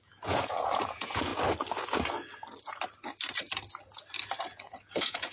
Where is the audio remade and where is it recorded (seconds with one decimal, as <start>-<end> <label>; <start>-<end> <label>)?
0.0-1.3 remade; 1.3-4.4 recorded; 4.4-5.3 remade